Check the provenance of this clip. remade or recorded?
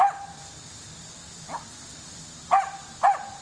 recorded